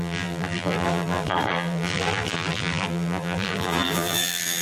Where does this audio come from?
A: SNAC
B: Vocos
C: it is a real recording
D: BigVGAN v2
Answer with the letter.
D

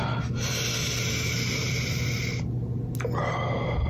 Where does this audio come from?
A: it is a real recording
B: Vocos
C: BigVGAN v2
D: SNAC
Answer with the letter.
A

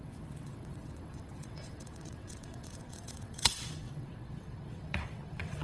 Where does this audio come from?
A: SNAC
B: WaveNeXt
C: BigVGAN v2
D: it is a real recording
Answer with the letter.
B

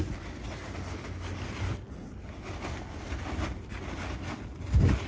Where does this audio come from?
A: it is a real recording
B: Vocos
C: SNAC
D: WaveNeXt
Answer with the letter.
A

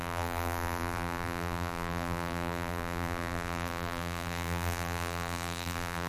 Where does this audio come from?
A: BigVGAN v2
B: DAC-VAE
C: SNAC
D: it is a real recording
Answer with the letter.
A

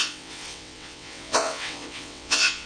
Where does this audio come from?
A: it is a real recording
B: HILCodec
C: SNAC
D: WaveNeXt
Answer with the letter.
D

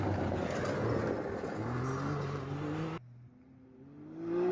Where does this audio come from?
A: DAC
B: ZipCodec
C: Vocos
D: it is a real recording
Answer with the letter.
D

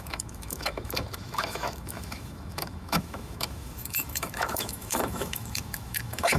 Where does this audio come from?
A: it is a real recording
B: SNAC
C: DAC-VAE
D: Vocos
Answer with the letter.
C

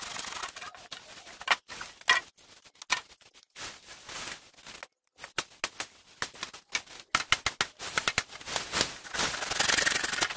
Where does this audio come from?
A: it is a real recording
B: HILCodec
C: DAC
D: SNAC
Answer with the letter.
A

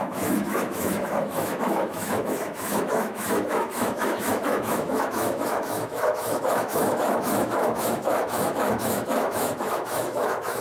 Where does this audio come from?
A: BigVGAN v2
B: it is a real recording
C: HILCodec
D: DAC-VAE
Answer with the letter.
D